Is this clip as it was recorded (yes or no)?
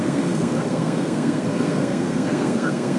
no